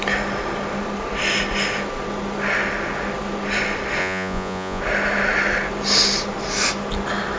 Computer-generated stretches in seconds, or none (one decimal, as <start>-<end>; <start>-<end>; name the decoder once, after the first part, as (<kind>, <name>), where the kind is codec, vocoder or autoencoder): 4.0-4.8 (vocoder, Vocos)